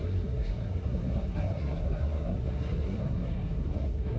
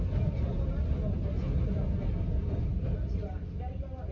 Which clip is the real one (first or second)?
second